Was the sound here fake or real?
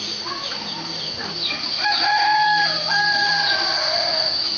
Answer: real